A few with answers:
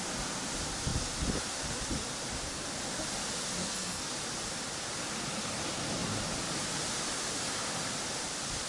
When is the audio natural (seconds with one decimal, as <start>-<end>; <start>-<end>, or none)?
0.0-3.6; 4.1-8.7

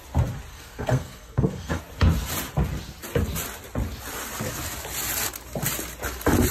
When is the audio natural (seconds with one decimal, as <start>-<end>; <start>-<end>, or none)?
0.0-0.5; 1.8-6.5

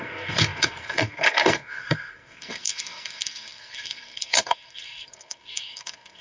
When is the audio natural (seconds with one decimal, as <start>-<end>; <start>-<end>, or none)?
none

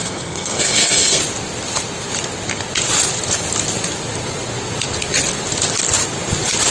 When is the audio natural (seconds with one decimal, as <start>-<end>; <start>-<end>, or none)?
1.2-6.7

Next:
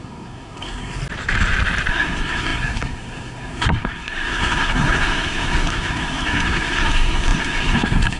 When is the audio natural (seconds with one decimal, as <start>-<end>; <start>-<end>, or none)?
1.0-1.9

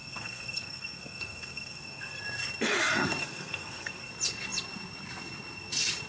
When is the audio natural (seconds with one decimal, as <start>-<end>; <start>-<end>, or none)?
2.2-3.2; 4.1-6.1

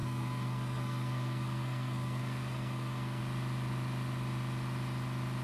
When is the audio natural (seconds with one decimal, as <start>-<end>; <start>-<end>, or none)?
3.2-5.4